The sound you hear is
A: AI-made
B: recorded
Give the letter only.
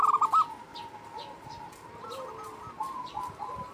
B